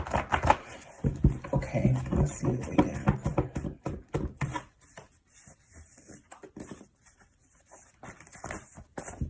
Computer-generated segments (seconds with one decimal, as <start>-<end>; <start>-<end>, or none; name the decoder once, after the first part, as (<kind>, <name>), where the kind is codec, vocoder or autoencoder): none